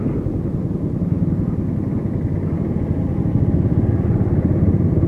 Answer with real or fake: real